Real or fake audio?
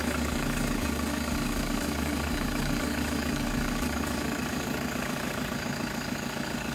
fake